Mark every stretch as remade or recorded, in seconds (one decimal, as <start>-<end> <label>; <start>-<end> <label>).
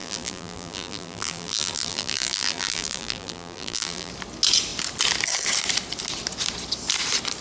0.0-4.1 remade; 4.1-7.4 recorded